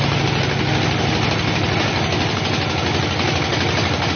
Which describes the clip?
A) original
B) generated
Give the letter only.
A